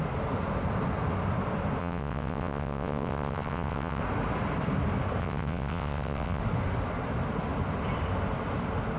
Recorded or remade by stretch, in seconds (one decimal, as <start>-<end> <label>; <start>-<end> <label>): 0.0-1.8 recorded; 1.8-4.0 remade; 4.0-5.2 recorded; 5.2-6.4 remade; 6.4-9.0 recorded